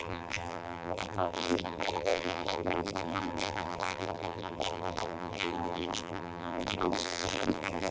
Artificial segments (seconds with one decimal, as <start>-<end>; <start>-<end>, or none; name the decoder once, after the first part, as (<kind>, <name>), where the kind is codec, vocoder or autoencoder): 0.0-7.9 (vocoder, BigVGAN v2)